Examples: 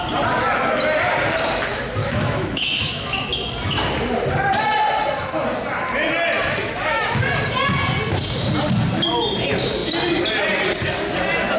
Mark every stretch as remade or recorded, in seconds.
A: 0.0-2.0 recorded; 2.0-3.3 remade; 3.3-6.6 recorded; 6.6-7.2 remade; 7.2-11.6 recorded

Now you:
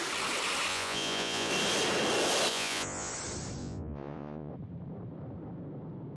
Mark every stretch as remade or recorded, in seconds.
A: 0.0-0.7 recorded; 0.7-1.5 remade; 1.5-2.5 recorded; 2.5-3.1 remade; 3.1-3.6 recorded; 3.6-4.5 remade; 4.5-6.2 recorded

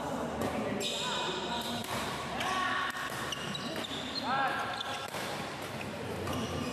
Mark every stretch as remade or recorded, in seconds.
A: 0.0-6.7 recorded

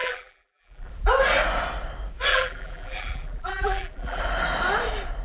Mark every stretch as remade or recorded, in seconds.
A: 0.0-0.9 remade; 0.9-2.3 recorded; 2.3-4.2 remade; 4.2-5.2 recorded

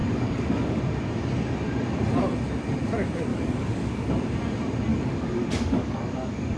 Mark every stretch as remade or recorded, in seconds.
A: 0.0-0.8 remade; 0.8-3.3 recorded; 3.3-4.1 remade; 4.1-4.9 recorded; 4.9-6.6 remade